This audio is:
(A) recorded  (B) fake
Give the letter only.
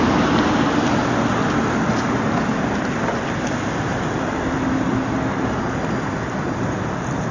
A